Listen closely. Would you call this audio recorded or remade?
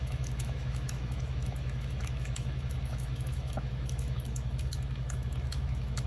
remade